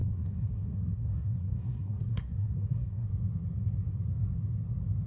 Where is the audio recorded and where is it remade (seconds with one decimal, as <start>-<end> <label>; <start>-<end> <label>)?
0.0-3.1 remade; 3.1-5.1 recorded